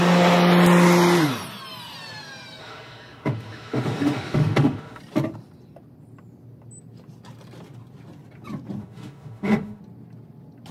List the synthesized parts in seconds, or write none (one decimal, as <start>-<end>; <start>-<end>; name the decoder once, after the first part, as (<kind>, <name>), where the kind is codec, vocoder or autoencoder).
2.6-5.0 (autoencoder, DAC-VAE); 8.8-9.8